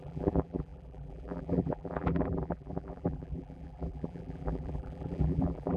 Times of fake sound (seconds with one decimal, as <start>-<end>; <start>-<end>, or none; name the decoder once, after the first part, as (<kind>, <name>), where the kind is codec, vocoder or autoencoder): 0.0-5.8 (vocoder, BigVGAN v2)

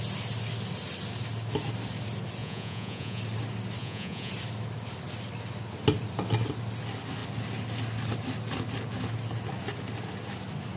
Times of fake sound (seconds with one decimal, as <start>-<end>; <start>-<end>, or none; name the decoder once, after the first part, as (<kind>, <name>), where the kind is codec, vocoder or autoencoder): 2.4-3.2 (vocoder, Vocos); 3.8-4.3

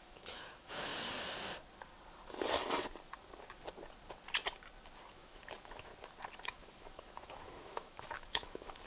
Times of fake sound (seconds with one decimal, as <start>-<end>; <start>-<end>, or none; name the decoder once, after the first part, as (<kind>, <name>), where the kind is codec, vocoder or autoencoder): 0.0-0.9 (autoencoder, DAC-VAE); 5.1-5.9; 6.4-8.9

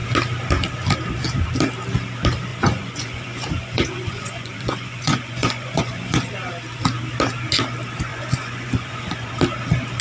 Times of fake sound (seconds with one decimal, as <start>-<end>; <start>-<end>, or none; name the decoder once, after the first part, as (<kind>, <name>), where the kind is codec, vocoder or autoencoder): 2.5-6.3 (vocoder, Vocos); 8.1-9.3

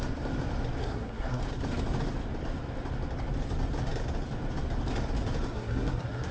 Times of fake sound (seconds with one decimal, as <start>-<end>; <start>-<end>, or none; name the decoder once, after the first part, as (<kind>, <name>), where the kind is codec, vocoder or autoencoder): 0.8-1.4 (codec, SNAC); 5.5-6.3

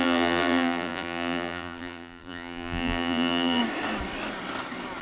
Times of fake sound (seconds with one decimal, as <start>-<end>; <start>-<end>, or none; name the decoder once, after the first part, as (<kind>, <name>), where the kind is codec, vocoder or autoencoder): 0.0-3.6 (vocoder, BigVGAN v2)

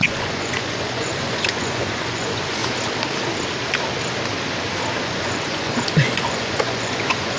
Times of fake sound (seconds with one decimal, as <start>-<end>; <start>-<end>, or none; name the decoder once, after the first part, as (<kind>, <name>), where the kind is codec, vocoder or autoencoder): 0.0-2.6 (vocoder, Vocos); 5.0-7.4